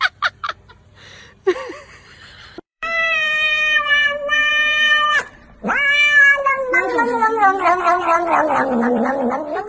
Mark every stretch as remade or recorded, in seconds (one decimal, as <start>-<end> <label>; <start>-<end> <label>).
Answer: 0.0-7.2 remade; 7.2-7.8 recorded; 7.8-9.7 remade